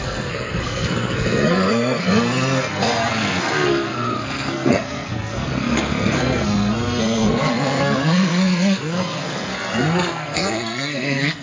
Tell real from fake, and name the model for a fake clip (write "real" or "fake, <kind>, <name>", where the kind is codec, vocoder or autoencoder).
fake, codec, SNAC